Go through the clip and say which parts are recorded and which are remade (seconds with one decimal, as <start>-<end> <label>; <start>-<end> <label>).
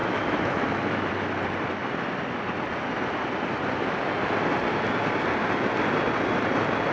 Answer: 0.0-1.1 remade; 1.1-6.9 recorded